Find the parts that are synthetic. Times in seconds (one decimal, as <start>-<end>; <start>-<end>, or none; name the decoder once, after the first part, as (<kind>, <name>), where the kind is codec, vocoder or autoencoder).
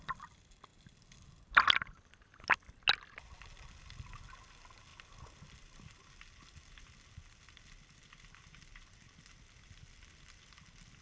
none